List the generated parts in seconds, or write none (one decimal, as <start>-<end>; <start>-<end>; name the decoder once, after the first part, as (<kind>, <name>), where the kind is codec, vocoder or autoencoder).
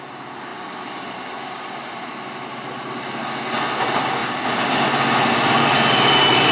none